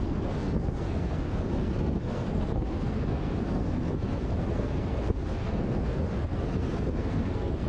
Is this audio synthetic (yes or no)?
yes